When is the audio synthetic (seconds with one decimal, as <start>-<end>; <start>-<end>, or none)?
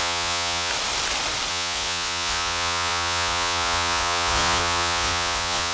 0.0-0.7; 1.5-5.7